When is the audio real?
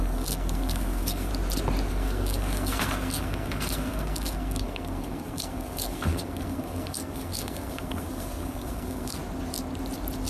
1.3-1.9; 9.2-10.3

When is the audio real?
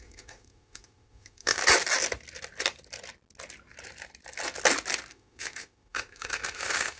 1.6-5.1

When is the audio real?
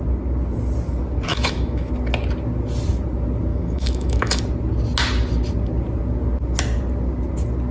0.0-1.3; 1.9-3.5; 4.4-7.7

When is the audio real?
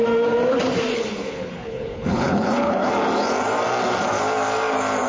0.0-0.9; 2.9-5.1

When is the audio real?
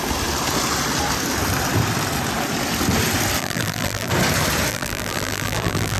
0.0-3.4; 4.1-4.7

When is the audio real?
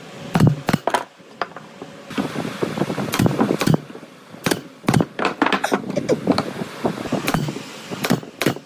0.0-8.7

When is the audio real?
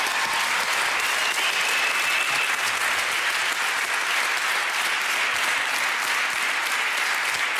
0.0-7.6